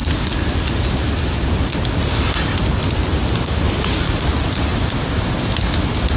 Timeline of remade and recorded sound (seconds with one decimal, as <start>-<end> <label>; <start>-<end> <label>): 0.0-6.2 recorded